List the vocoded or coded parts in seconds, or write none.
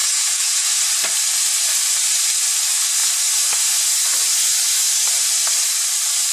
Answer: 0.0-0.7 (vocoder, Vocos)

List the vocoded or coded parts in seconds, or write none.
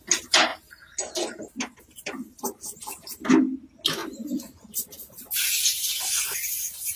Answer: 0.5-1.8 (vocoder, BigVGAN v2); 4.0-6.5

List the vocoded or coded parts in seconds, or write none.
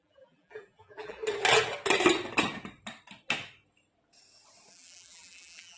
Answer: 0.0-1.2 (vocoder, BigVGAN v2); 4.7-5.8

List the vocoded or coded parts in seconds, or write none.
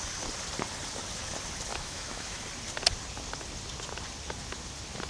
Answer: 1.7-2.4 (autoencoder, DAC-VAE)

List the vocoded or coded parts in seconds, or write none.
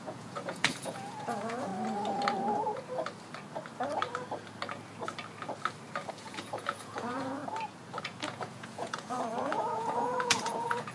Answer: 0.0-1.7 (vocoder, Vocos); 6.1-7.4; 8.0-10.9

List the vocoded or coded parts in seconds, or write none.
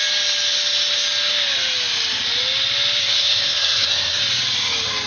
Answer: 3.0-4.2 (codec, SNAC)